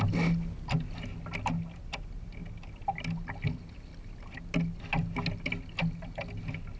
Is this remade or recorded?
recorded